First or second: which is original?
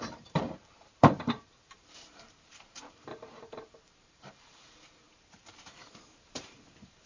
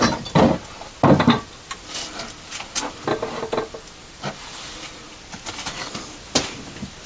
second